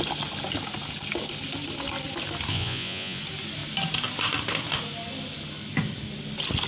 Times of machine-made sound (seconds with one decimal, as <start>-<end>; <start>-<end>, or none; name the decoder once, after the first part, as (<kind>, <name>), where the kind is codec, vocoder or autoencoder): 2.5-3.2 (vocoder, Vocos)